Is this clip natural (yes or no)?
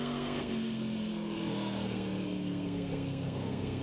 no